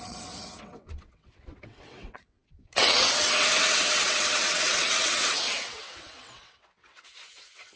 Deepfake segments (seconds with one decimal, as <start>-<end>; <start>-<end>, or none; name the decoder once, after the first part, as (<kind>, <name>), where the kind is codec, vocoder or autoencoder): 0.0-7.8 (vocoder, WaveNeXt)